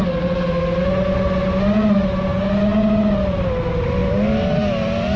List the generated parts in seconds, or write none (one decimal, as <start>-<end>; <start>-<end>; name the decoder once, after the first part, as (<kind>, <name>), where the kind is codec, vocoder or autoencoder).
none

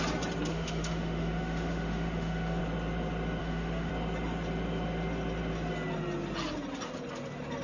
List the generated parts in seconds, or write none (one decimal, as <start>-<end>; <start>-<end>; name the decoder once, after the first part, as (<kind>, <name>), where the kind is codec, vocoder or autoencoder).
0.5-2.6 (autoencoder, DAC-VAE); 3.4-3.9

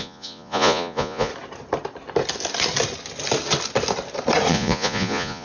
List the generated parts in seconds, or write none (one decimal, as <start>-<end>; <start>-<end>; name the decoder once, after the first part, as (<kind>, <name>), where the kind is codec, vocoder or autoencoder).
0.0-1.3 (vocoder, Vocos); 4.5-5.4